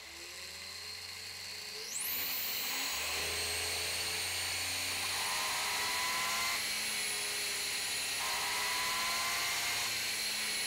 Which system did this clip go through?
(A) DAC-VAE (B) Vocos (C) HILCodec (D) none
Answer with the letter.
D